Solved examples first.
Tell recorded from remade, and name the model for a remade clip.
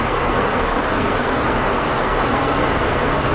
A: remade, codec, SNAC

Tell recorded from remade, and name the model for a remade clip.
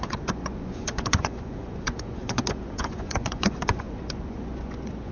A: remade, vocoder, Vocos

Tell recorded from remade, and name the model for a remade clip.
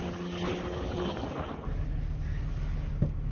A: recorded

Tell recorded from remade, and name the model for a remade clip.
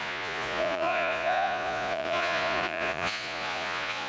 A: remade, vocoder, Vocos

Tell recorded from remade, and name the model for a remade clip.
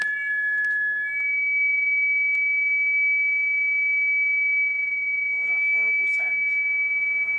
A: recorded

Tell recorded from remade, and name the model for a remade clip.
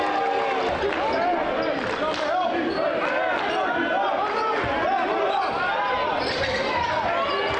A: recorded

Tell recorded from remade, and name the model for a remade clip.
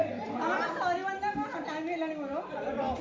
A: recorded